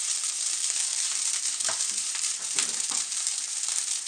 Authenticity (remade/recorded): remade